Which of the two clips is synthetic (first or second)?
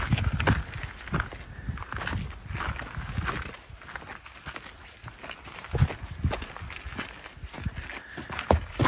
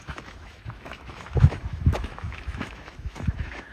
second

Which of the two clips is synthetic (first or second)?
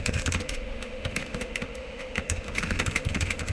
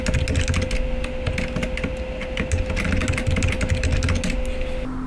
first